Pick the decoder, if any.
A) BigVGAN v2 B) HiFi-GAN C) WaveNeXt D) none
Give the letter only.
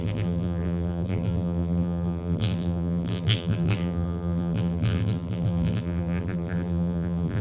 A